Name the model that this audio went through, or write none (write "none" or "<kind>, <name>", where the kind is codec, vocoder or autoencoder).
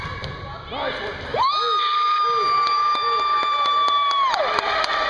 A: none